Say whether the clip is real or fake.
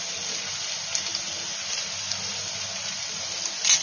fake